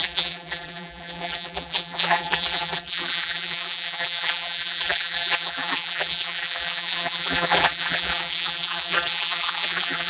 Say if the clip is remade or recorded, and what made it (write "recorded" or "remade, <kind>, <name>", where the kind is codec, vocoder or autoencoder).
remade, vocoder, BigVGAN v2